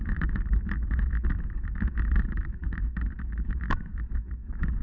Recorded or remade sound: remade